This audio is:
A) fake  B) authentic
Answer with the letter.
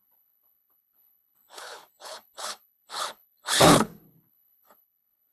A